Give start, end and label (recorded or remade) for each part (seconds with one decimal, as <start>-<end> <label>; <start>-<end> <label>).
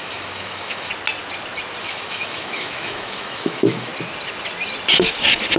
0.0-0.9 remade; 0.9-1.8 recorded; 1.8-3.9 remade; 3.9-5.6 recorded